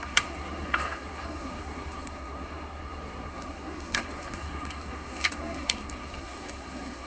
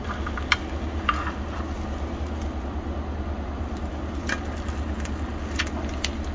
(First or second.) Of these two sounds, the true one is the second